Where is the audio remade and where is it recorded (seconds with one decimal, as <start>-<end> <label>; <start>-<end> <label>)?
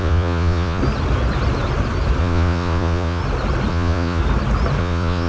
0.0-0.8 remade; 0.8-2.2 recorded; 2.2-3.2 remade; 3.2-3.7 recorded; 3.7-4.2 remade; 4.2-4.8 recorded; 4.8-5.3 remade